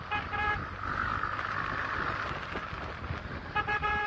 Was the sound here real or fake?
real